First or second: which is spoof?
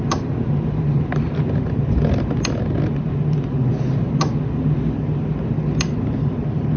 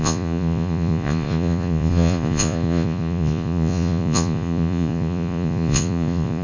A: second